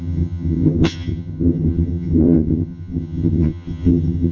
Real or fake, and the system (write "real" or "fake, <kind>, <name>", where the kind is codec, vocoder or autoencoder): fake, vocoder, HiFi-GAN